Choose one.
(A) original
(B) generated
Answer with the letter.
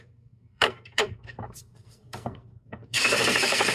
B